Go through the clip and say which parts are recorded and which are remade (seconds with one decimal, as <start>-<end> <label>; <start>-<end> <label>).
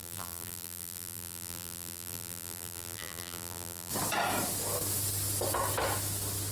0.0-3.9 remade; 3.9-6.5 recorded